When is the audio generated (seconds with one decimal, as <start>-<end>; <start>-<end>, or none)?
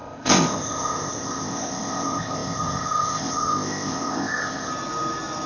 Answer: 0.0-4.7